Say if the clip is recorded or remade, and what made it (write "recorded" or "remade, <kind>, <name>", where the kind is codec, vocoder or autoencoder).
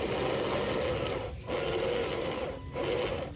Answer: recorded